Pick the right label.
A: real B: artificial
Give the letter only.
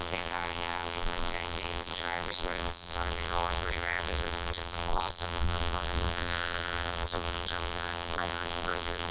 B